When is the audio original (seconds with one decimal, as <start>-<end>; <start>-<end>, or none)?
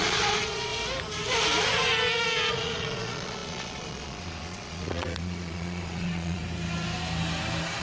0.7-2.5; 6.4-7.8